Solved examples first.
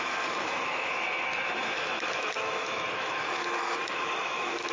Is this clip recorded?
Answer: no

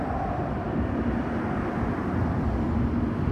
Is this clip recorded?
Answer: yes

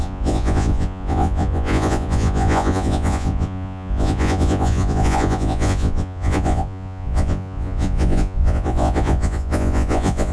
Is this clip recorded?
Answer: no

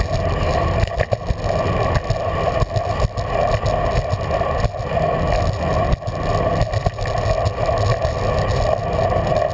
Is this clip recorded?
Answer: yes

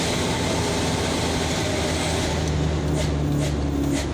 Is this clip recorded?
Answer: yes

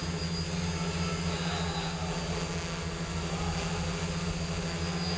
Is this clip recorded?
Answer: yes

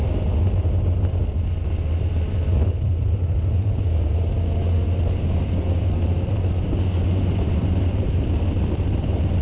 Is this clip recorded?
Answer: yes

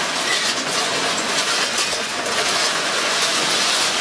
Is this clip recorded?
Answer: no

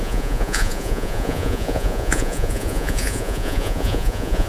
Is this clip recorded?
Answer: no